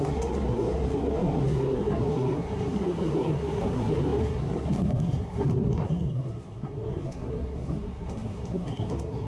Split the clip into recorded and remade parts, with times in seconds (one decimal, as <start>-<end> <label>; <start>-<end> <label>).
0.0-9.3 remade